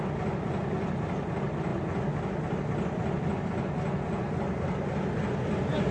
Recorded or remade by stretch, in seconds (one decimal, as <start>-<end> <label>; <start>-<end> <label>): 0.0-5.9 recorded